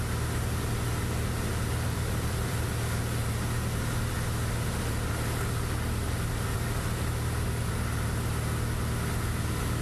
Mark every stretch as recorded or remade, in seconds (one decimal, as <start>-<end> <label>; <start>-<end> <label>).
0.0-1.5 recorded; 1.5-2.7 remade; 2.7-9.8 recorded